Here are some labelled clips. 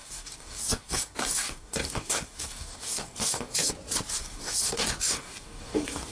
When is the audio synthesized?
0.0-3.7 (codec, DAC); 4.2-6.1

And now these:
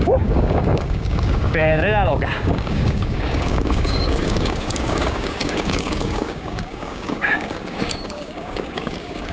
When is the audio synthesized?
0.0-9.3 (codec, DAC)

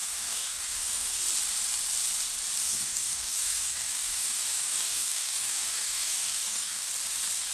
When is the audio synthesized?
0.0-1.2 (codec, DAC); 2.6-6.9

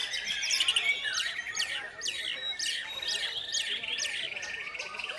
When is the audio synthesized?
none

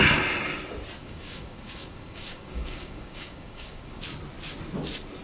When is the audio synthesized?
1.0-4.0 (codec, DAC)

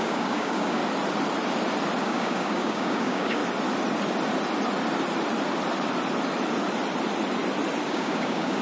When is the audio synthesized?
0.0-0.8 (codec, DAC); 2.0-3.4; 7.9-8.6

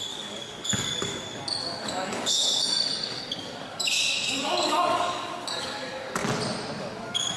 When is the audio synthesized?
0.0-6.2 (codec, DAC); 6.8-7.4

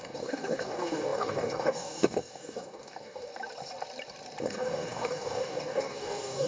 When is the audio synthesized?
0.0-3.3 (codec, DAC); 4.4-6.5